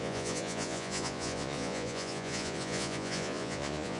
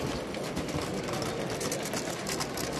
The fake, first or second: first